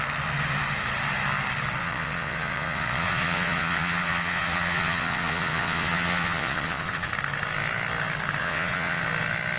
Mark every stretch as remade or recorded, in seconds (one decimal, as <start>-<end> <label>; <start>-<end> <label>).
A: 0.0-1.8 recorded; 1.8-7.1 remade; 7.1-8.4 recorded; 8.4-9.0 remade; 9.0-9.6 recorded